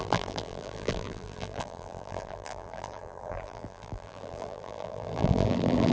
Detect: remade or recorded remade